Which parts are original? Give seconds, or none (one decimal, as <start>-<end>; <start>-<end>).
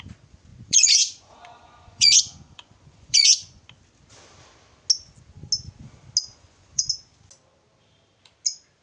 0.0-0.5; 3.6-6.3; 6.9-8.8